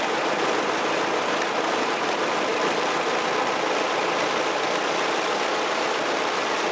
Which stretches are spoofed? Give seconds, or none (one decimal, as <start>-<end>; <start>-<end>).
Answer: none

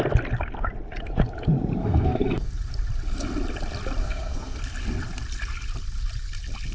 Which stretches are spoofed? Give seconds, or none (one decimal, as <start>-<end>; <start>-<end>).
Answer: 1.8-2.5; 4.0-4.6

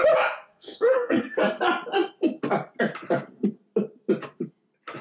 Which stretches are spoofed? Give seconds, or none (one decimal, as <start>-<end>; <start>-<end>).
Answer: 0.5-1.6